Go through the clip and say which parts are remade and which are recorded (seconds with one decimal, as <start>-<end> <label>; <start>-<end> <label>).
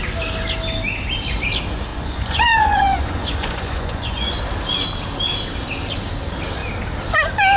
0.0-1.9 recorded; 1.9-4.4 remade; 4.4-7.6 recorded